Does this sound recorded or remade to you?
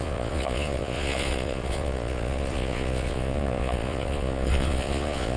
remade